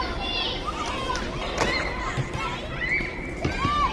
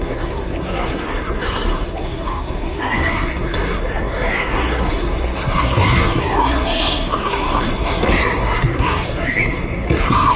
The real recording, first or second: first